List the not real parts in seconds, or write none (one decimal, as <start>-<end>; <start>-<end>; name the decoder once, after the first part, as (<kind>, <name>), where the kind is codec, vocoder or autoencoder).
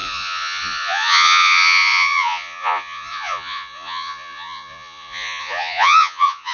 0.0-6.5 (vocoder, Vocos)